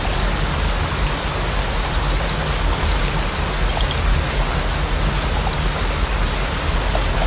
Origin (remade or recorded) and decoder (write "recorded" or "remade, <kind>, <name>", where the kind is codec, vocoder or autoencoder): recorded